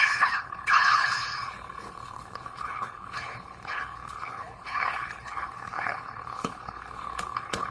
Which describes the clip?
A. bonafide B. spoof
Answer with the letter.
B